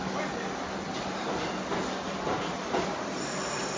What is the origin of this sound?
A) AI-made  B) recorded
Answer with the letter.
B